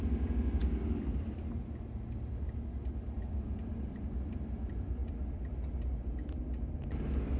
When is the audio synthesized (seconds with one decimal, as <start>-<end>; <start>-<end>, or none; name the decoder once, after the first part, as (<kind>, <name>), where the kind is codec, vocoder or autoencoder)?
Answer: none